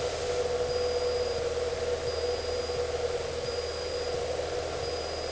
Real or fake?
real